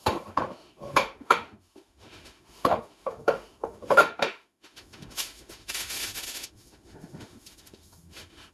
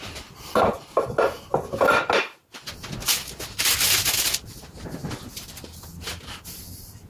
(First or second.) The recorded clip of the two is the second